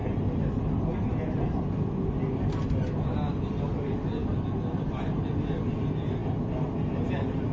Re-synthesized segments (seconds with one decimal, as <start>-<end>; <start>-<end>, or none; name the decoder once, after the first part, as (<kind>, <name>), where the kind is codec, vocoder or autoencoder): none